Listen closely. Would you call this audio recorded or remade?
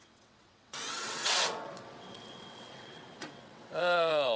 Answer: remade